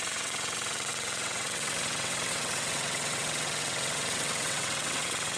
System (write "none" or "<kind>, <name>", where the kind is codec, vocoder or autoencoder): vocoder, WaveNeXt